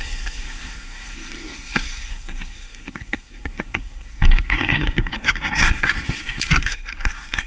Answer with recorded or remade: remade